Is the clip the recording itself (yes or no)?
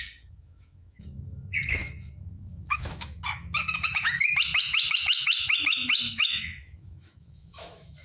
no